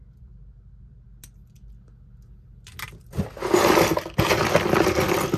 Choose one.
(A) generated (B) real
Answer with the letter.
B